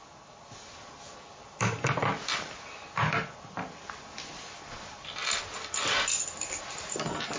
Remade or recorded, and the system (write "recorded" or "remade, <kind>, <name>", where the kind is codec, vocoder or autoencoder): recorded